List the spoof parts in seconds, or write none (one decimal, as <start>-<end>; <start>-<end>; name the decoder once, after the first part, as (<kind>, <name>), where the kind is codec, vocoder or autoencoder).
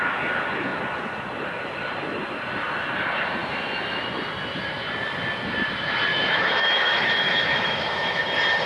6.1-8.2 (autoencoder, DAC-VAE)